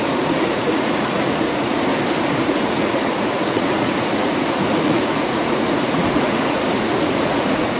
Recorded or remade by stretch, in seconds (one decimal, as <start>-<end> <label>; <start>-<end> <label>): 0.0-1.9 remade; 1.9-2.4 recorded; 2.4-7.8 remade